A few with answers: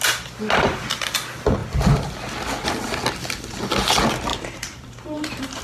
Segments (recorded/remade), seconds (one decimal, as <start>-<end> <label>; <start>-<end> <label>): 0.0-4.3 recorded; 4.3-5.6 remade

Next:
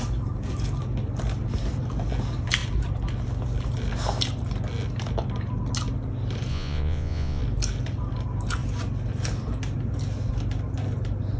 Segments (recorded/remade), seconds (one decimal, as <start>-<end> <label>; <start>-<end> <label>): 0.0-6.5 recorded; 6.5-7.4 remade; 7.4-11.4 recorded

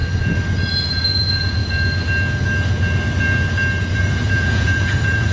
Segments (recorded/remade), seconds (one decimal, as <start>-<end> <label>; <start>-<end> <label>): 0.0-0.7 recorded; 0.7-1.6 remade; 1.6-4.0 recorded; 4.0-5.3 remade

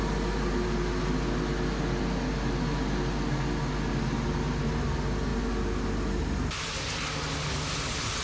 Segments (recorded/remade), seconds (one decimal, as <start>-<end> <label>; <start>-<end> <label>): 0.0-8.2 recorded

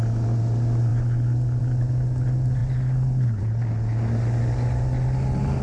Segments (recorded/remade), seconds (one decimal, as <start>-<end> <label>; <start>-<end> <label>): 0.0-5.6 recorded

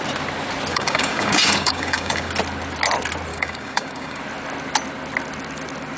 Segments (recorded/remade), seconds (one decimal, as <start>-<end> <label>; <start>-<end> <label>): 0.0-0.7 recorded; 0.7-2.3 remade; 2.3-3.3 recorded; 3.3-4.2 remade; 4.2-6.0 recorded

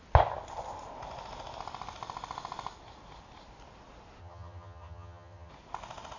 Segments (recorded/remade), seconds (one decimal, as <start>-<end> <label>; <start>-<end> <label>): 0.0-4.2 recorded; 4.2-5.5 remade; 5.5-6.2 recorded